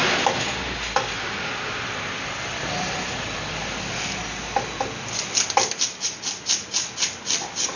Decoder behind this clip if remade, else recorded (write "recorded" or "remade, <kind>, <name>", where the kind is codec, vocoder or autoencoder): recorded